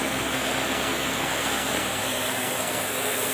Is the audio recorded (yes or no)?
no